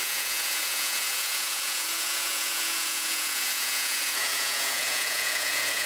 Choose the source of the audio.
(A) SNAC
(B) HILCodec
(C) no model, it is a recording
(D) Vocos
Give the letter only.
D